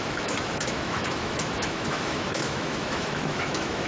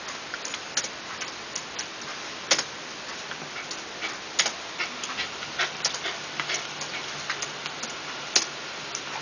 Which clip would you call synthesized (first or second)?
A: first